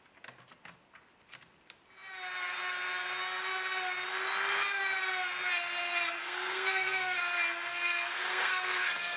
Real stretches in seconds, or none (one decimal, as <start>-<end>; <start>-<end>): 0.0-6.2; 7.2-7.7